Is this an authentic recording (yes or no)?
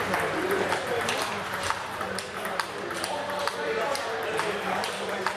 yes